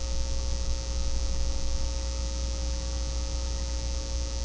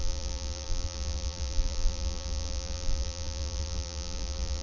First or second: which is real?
first